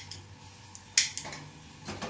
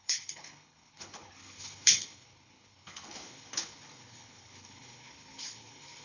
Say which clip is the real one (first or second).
first